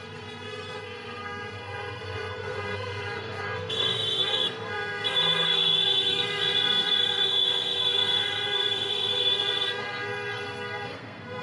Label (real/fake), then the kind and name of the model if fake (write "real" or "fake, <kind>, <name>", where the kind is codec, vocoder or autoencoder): fake, codec, SNAC